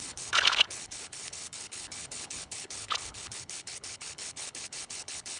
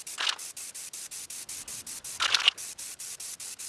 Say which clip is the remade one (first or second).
first